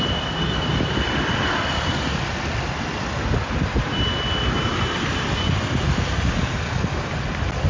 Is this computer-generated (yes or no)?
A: no